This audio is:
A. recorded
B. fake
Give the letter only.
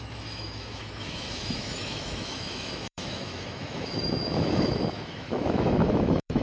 B